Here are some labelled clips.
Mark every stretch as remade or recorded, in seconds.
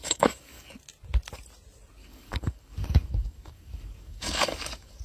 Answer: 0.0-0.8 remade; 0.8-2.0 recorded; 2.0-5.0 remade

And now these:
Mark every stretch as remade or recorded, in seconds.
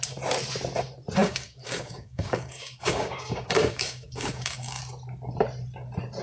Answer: 0.0-1.2 recorded; 1.2-4.8 remade; 4.8-6.2 recorded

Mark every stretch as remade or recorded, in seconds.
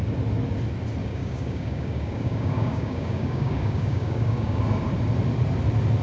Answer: 0.0-1.0 recorded; 1.0-4.6 remade; 4.6-6.0 recorded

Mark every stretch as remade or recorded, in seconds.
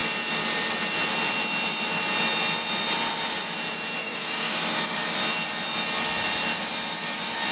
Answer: 0.0-4.0 recorded; 4.0-5.0 remade; 5.0-7.5 recorded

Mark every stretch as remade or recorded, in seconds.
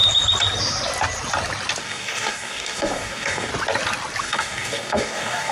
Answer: 0.0-1.8 recorded; 1.8-3.5 remade; 3.5-4.2 recorded; 4.2-5.5 remade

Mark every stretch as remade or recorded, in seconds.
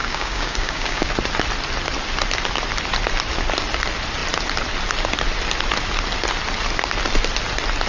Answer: 0.0-1.1 remade; 1.1-7.9 recorded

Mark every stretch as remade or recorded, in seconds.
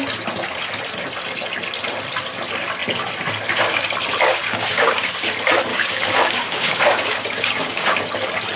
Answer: 0.0-4.3 recorded; 4.3-5.1 remade; 5.1-5.7 recorded; 5.7-8.0 remade; 8.0-8.6 recorded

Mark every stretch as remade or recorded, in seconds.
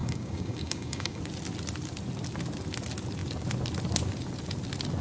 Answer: 0.0-1.2 remade; 1.2-5.0 recorded